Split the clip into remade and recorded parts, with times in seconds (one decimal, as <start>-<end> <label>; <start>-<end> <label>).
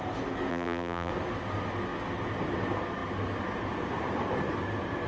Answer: 0.0-0.5 recorded; 0.5-1.1 remade; 1.1-5.1 recorded